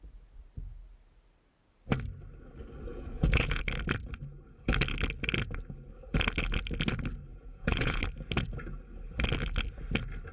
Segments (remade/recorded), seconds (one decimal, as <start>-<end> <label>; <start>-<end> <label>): 0.0-2.9 recorded; 2.9-3.6 remade; 3.6-7.3 recorded; 7.3-8.0 remade; 8.0-10.3 recorded

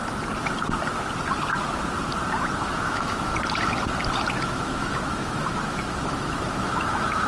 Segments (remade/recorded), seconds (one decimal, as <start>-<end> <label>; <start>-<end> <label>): 0.0-2.6 recorded; 2.6-3.3 remade; 3.3-4.4 recorded; 4.4-7.3 remade

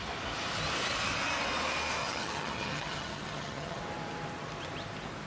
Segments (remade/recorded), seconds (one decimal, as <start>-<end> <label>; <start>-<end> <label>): 0.0-2.0 recorded; 2.0-3.8 remade; 3.8-5.3 recorded

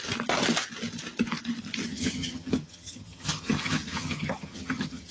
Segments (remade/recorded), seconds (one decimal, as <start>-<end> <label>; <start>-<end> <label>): 0.0-1.9 recorded; 1.9-5.1 remade

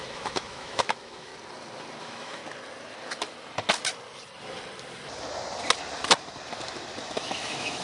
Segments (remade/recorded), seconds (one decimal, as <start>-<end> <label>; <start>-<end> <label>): 0.0-1.3 remade; 1.3-2.0 recorded; 2.0-2.4 remade; 2.4-7.0 recorded; 7.0-7.8 remade

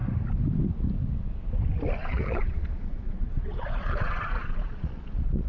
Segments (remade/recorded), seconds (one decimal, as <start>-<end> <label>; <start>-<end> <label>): 0.0-2.0 recorded; 2.0-5.5 remade